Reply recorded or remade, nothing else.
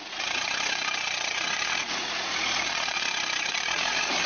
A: remade